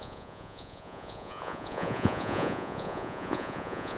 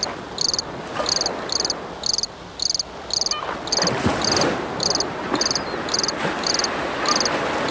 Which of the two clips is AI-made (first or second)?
first